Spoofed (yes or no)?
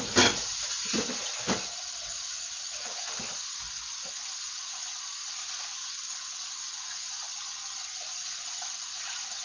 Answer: no